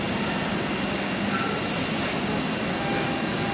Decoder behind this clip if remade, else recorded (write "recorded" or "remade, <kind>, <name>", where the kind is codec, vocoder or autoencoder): recorded